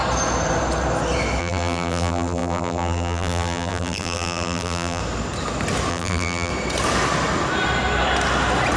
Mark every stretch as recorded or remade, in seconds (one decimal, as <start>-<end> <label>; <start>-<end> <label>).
0.0-1.4 recorded; 1.4-5.0 remade; 5.0-5.9 recorded; 5.9-6.5 remade; 6.5-8.8 recorded